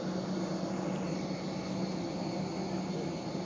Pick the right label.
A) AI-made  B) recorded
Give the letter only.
B